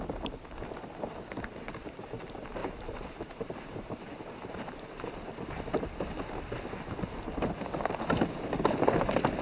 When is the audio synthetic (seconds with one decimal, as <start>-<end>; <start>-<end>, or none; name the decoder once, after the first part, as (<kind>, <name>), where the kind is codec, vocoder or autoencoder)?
2.6-4.6 (vocoder, BigVGAN v2)